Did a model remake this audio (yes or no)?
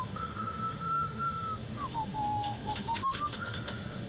yes